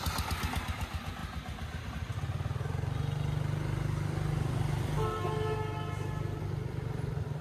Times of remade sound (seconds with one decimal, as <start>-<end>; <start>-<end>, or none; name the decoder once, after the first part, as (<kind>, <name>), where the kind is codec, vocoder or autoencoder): none

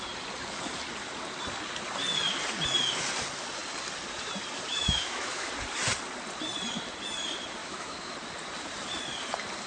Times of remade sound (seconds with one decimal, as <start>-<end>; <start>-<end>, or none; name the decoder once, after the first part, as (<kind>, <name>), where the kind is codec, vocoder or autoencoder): 4.7-5.5 (autoencoder, DAC-VAE); 7.6-8.1

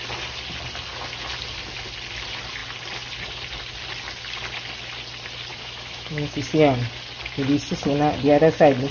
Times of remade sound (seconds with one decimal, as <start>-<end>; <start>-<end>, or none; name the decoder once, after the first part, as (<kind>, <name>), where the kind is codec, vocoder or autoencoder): 5.5-6.4 (autoencoder, DAC-VAE)

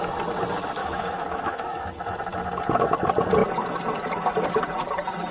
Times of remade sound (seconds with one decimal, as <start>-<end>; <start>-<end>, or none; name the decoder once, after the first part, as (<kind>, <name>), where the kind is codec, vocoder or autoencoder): 0.8-1.9 (autoencoder, DAC-VAE)